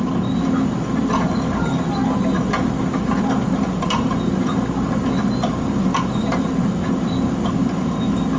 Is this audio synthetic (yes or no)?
no